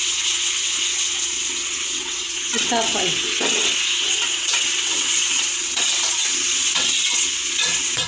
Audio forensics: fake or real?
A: fake